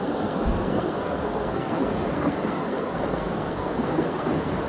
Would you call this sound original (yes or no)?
no